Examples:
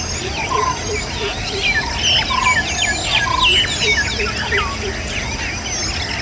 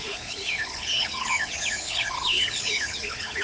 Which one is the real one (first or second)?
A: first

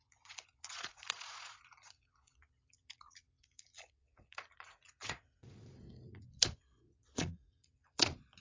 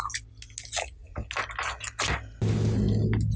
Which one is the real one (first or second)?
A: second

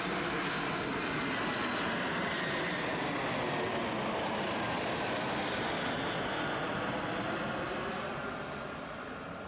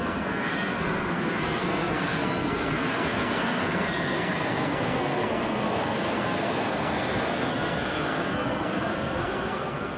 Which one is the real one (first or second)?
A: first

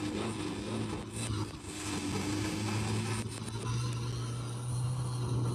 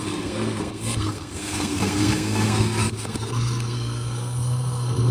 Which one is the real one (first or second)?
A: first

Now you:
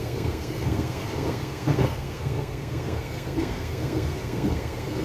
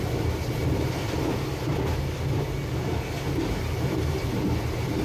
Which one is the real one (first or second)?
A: second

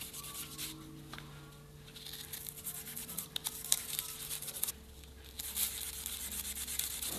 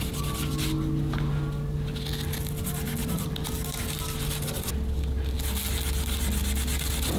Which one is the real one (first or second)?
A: second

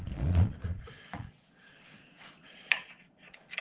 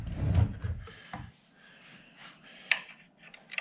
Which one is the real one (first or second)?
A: second